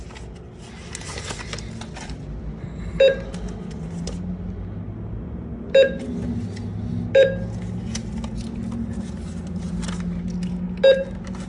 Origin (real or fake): real